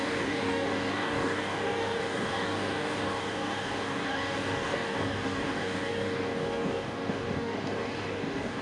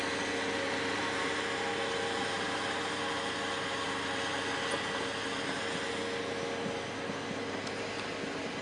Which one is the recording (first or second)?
second